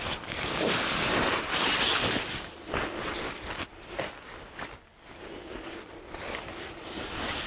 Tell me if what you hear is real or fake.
real